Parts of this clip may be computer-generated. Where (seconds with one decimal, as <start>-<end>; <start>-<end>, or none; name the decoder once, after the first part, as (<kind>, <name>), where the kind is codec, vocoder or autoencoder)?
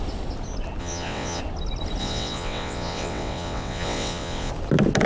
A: 0.8-1.4 (vocoder, WaveNeXt); 2.0-4.5